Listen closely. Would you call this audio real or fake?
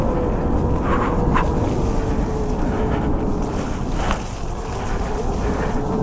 real